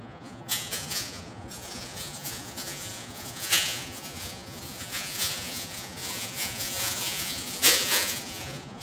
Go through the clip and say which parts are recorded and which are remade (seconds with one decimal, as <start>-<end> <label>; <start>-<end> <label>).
0.0-8.8 remade